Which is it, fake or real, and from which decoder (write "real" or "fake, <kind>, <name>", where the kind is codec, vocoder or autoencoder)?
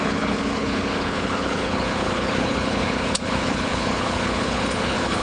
fake, codec, HILCodec